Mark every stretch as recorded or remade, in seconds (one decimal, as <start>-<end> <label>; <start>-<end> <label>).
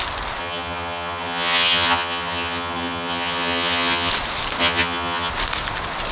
0.0-0.4 recorded; 0.4-4.1 remade; 4.1-4.6 recorded; 4.6-5.3 remade; 5.3-6.1 recorded